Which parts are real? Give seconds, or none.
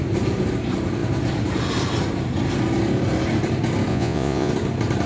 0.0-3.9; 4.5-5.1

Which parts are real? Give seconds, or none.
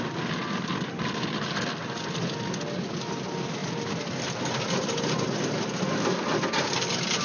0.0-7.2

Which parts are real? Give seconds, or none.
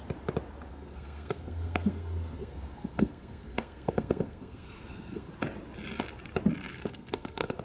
0.0-0.7; 5.3-6.7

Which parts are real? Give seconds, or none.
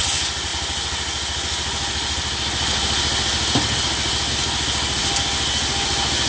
0.0-6.3